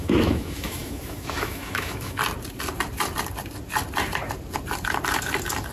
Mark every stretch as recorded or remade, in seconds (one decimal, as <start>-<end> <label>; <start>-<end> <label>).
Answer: 0.0-2.2 remade; 2.2-5.7 recorded